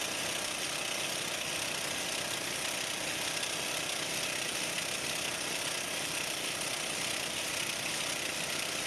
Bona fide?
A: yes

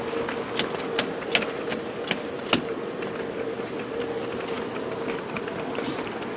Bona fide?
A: yes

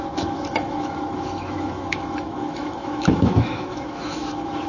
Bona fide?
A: no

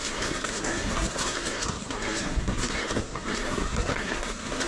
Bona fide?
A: no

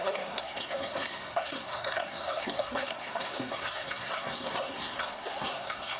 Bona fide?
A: no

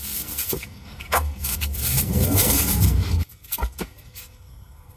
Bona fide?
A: no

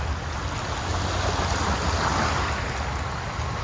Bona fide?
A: yes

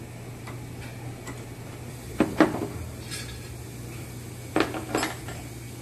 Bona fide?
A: yes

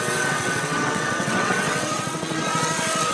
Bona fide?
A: no